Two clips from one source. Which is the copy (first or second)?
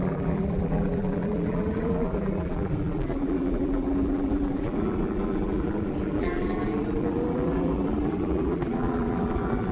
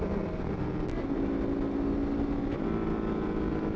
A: first